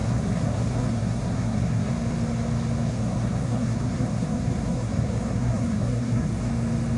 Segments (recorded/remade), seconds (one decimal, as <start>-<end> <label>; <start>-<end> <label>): 0.0-1.9 remade; 1.9-2.9 recorded; 2.9-6.5 remade; 6.5-7.0 recorded